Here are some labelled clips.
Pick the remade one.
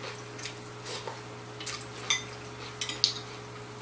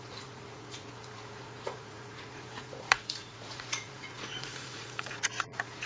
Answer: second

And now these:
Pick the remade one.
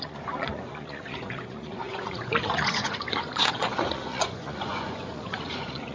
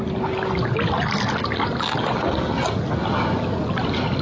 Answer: first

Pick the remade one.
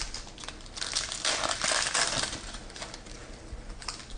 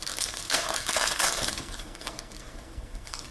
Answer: second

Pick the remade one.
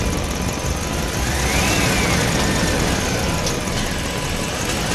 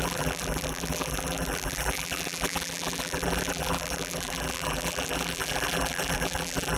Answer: second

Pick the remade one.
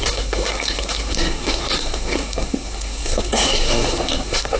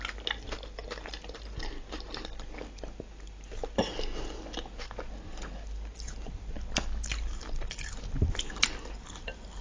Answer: first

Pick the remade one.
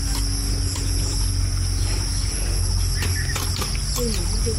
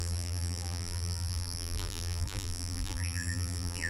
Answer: second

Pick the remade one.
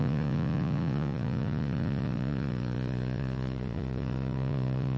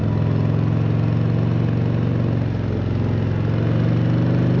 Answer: first